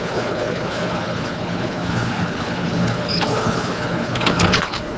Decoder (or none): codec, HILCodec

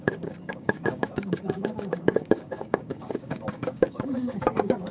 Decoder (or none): codec, DAC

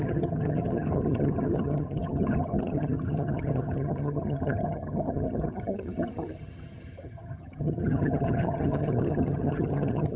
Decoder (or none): vocoder, HiFi-GAN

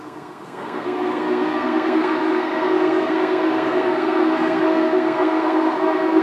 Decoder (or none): codec, SNAC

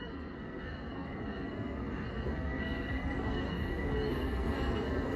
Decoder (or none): codec, SNAC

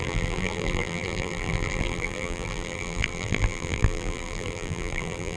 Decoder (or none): vocoder, BigVGAN v2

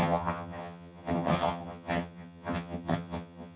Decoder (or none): vocoder, HiFi-GAN